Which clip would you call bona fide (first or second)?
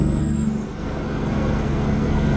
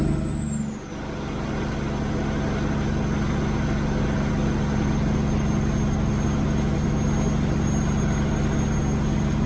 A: second